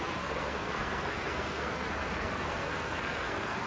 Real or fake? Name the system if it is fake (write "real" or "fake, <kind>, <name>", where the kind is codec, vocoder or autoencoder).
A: fake, codec, SNAC